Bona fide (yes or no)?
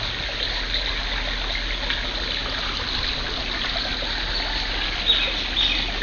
yes